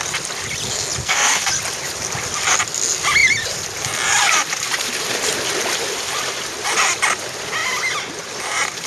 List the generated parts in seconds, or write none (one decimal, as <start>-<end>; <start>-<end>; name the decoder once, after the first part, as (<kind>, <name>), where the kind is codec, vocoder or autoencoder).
1.0-1.5 (codec, SNAC)